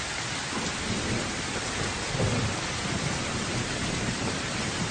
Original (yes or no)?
yes